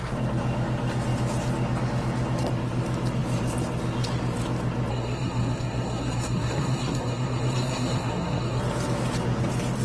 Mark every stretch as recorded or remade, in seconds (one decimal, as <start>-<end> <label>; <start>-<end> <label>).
0.0-4.9 recorded; 4.9-8.6 remade; 8.6-9.8 recorded